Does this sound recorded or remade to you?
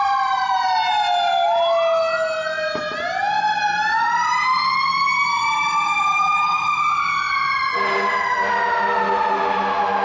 recorded